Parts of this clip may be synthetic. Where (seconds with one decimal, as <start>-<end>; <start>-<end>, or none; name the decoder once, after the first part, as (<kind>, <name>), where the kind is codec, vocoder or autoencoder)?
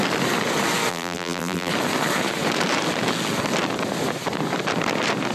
0.9-1.7 (vocoder, BigVGAN v2)